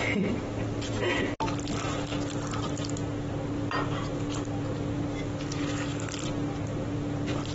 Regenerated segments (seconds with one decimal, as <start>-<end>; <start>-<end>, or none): 5.9-7.5